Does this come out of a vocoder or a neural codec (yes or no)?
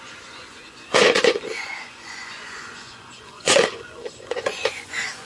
yes